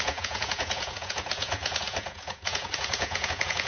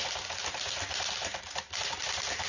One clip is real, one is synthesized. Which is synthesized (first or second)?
first